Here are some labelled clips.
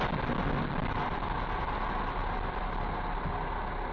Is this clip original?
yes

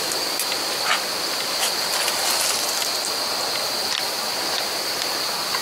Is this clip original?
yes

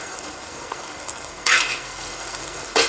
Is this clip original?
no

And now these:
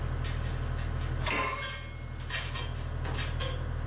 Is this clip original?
yes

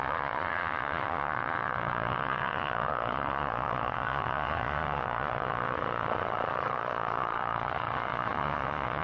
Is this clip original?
no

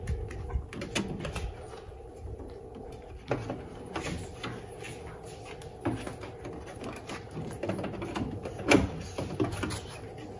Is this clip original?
yes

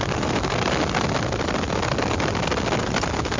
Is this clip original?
yes